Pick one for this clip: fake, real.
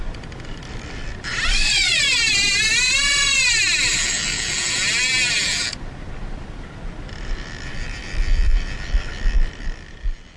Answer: fake